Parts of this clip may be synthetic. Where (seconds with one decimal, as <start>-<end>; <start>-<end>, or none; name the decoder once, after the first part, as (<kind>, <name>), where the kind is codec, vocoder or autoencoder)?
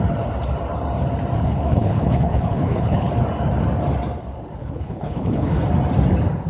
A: 1.4-3.1 (codec, HILCodec); 4.6-5.6